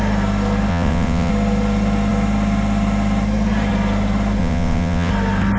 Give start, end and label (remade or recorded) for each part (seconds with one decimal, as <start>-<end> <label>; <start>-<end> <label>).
0.0-0.7 recorded; 0.7-1.3 remade; 1.3-4.4 recorded; 4.4-5.1 remade; 5.1-5.6 recorded